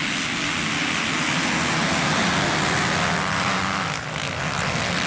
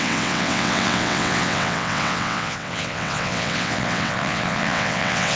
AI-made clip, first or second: second